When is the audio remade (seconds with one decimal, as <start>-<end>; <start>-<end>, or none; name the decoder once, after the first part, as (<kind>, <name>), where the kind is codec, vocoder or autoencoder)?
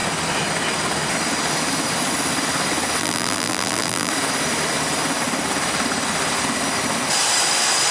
3.0-4.1 (vocoder, BigVGAN v2)